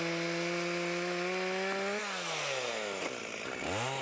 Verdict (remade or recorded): recorded